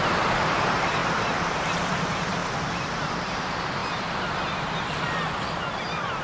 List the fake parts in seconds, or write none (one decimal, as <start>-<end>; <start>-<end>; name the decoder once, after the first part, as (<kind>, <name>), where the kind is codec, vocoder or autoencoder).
0.0-2.4 (vocoder, BigVGAN v2); 3.1-3.8; 5.8-6.2